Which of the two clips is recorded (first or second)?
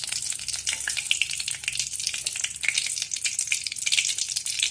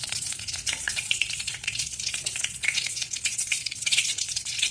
first